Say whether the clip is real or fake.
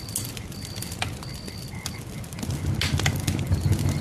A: real